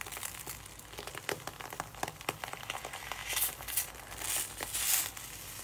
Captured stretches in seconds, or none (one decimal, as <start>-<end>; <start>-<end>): 0.0-5.6